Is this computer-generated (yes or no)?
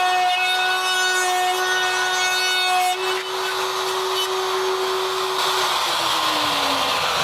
no